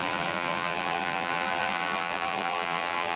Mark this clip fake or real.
fake